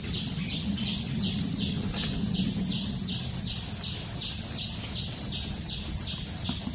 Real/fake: real